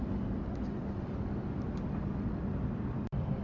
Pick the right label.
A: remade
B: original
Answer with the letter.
B